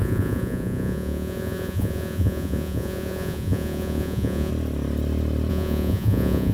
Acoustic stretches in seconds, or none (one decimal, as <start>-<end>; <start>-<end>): 4.5-5.5